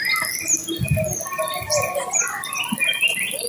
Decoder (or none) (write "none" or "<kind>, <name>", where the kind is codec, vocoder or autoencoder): none